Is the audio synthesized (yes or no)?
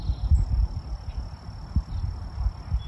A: no